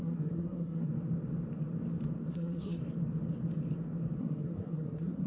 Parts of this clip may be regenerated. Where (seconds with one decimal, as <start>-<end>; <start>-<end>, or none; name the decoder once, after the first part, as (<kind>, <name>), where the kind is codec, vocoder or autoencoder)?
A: 0.0-0.9 (codec, SNAC); 2.3-2.8; 4.2-5.3